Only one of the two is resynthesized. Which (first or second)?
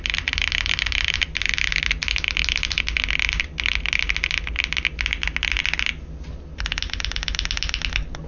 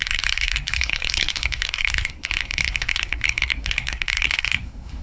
second